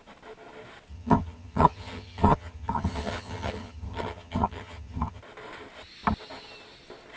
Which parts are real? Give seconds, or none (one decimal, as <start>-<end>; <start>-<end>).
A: 0.0-0.9; 5.2-7.2